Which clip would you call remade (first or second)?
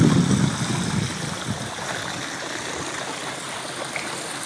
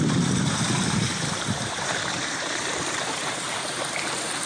second